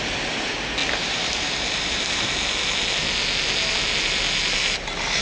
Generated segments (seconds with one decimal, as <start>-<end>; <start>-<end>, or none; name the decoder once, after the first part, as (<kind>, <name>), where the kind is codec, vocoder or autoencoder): none